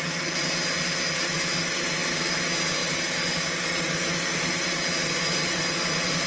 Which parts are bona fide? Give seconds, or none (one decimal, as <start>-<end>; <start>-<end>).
0.0-6.3